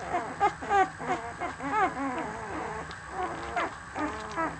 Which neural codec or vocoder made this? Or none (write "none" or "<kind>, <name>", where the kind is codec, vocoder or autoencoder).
none